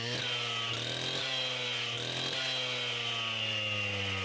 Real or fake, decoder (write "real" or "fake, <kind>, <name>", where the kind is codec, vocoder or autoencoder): real